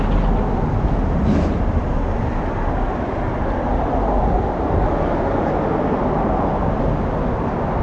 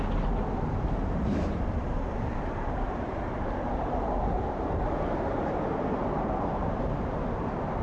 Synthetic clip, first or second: second